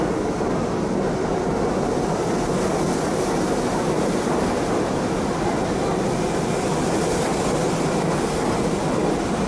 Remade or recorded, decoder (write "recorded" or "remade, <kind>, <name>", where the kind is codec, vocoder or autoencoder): recorded